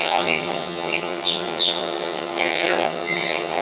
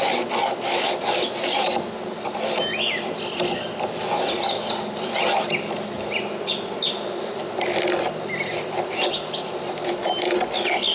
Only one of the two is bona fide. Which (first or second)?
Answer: second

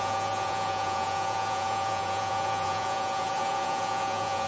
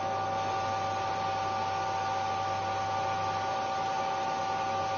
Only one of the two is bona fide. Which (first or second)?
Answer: second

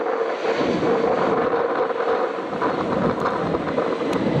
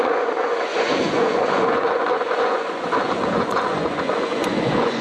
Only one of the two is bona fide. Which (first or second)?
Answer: first